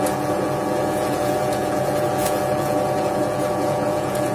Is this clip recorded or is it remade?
remade